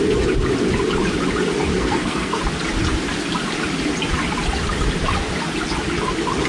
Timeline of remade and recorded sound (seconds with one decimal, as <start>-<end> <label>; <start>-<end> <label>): 0.0-1.7 recorded; 1.7-2.4 remade; 2.4-6.5 recorded